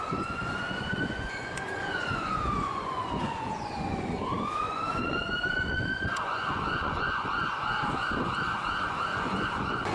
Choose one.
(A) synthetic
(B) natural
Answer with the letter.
A